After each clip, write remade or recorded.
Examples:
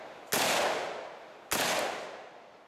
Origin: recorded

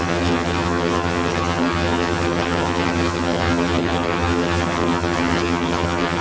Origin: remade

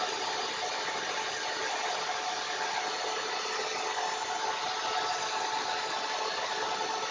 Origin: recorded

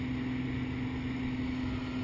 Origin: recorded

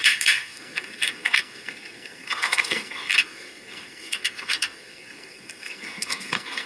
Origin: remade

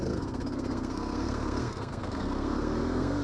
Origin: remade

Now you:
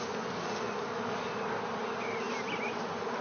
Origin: recorded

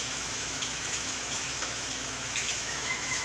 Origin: remade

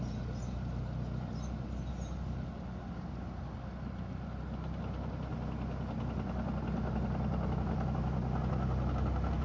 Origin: recorded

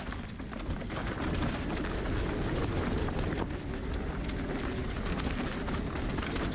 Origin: recorded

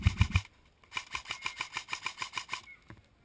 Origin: recorded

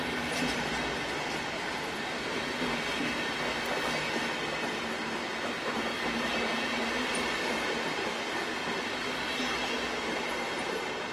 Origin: recorded